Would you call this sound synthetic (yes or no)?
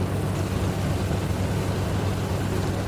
no